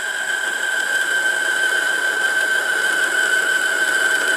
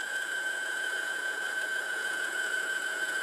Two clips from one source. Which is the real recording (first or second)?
first